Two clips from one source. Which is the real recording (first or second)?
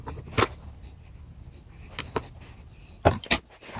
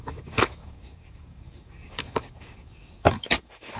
first